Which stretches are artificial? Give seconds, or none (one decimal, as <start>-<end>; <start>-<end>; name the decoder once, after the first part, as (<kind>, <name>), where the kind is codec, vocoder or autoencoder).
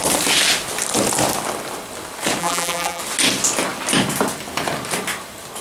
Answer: 2.4-3.0 (vocoder, BigVGAN v2)